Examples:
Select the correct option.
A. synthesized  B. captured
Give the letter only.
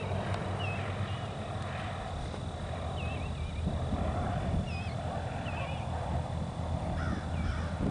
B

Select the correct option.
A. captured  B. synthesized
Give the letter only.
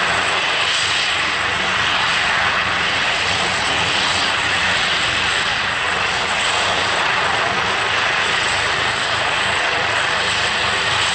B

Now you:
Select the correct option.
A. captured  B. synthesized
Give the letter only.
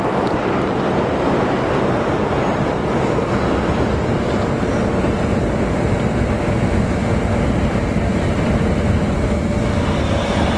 A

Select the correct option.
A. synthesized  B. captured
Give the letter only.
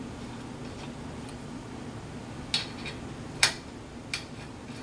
B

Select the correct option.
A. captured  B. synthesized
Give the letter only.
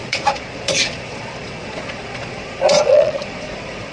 B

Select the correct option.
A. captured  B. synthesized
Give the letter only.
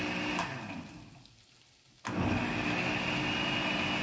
A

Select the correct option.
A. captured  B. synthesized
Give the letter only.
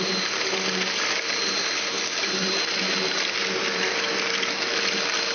A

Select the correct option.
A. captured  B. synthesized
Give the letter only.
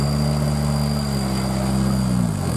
A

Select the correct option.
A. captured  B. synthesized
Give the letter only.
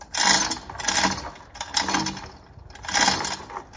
A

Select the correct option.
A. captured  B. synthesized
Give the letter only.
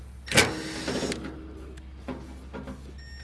A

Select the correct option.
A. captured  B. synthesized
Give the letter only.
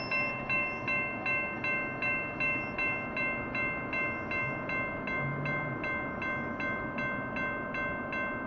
A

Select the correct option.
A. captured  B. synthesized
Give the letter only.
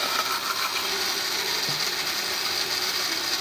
A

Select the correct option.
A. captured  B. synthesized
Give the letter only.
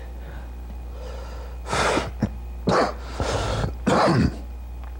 A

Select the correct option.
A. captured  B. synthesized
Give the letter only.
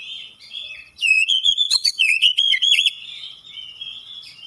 B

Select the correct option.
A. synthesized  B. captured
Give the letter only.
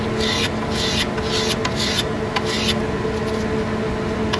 B